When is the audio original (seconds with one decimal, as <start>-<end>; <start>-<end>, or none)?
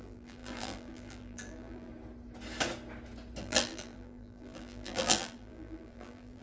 1.9-3.4